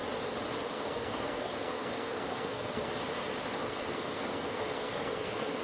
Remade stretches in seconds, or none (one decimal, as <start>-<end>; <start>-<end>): 0.7-2.9; 3.6-5.6